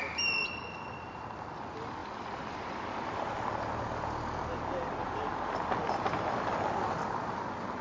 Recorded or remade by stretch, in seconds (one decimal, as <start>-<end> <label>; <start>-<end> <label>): 0.0-7.8 recorded